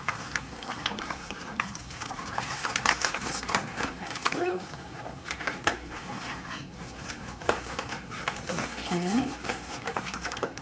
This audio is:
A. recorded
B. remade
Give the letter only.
B